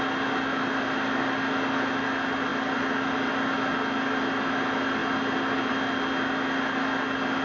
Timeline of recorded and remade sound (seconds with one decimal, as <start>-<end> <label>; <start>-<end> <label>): 0.0-7.4 recorded